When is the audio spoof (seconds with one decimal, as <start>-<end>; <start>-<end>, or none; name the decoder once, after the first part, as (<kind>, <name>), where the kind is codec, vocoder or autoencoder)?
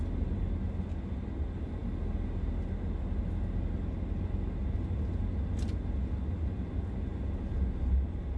none